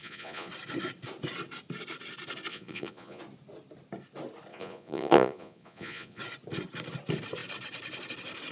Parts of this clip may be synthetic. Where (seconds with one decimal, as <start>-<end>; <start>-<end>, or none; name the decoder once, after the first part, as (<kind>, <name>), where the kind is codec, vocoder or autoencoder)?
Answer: 0.0-0.5 (vocoder, Vocos); 2.5-3.2; 4.5-6.2

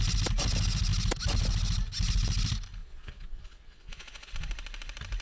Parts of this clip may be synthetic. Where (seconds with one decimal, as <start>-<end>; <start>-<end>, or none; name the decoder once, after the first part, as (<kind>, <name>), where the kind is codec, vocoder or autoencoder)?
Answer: 2.8-4.3 (vocoder, Vocos)

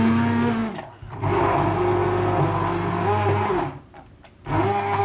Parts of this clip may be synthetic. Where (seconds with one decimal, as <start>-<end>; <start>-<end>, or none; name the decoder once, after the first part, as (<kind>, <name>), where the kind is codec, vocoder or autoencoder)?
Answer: none

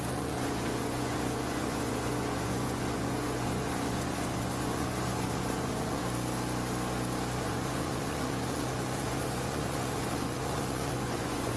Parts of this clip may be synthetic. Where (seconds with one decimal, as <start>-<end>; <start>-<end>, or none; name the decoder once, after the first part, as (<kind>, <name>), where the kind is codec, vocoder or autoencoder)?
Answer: 0.0-6.0 (vocoder, Vocos); 7.4-11.6

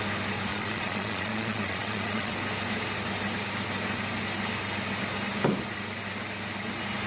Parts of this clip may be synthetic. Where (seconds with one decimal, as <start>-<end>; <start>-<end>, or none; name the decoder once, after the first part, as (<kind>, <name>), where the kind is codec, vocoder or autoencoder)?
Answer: 0.5-2.3 (vocoder, Vocos)

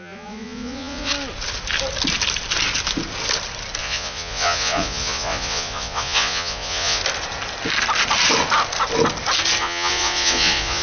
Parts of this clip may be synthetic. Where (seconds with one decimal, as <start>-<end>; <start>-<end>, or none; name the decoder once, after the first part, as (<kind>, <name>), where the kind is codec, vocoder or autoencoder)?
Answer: 0.0-1.1 (vocoder, Vocos); 3.8-7.0; 9.6-10.8

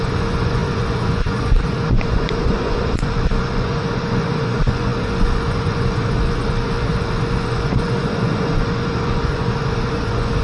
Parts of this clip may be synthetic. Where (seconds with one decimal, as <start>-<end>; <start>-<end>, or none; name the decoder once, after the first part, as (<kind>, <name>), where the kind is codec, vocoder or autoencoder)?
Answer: 0.0-10.4 (vocoder, Vocos)